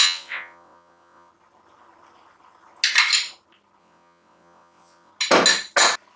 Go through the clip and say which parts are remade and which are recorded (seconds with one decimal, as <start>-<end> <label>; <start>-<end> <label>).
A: 0.0-1.3 remade; 1.3-3.8 recorded; 3.8-5.1 remade; 5.1-6.2 recorded